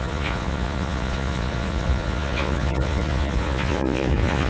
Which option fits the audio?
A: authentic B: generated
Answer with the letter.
B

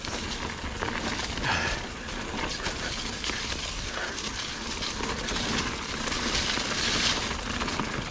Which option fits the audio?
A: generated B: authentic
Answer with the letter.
B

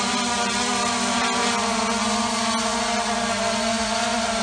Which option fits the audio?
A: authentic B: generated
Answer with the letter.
A